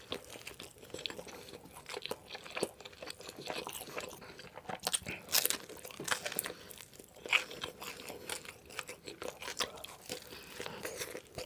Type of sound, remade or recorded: recorded